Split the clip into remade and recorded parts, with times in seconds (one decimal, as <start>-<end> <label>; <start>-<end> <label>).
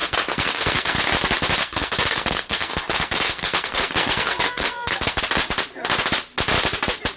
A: 0.0-1.0 remade; 1.0-1.6 recorded; 1.6-5.2 remade; 5.2-7.2 recorded